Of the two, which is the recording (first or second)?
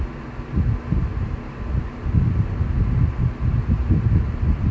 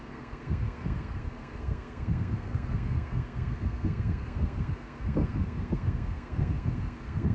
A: first